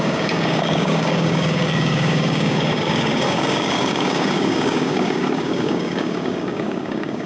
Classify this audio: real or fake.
fake